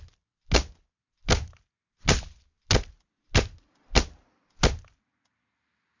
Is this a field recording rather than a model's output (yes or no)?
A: yes